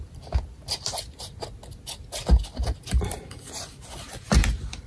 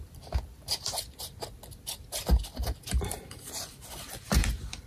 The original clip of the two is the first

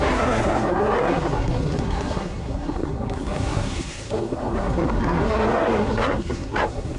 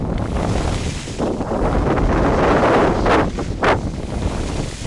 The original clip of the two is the second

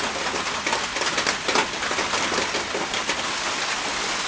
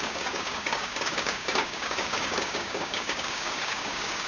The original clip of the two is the first